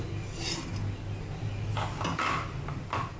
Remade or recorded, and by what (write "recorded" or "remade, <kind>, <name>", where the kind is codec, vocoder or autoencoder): recorded